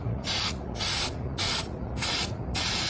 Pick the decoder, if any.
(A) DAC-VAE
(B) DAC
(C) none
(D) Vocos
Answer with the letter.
D